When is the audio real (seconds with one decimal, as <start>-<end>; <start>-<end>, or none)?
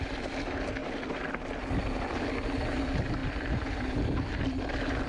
0.0-5.1